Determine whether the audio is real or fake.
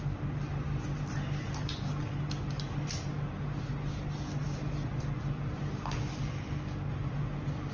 real